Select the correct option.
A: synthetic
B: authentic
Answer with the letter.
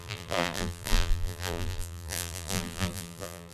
A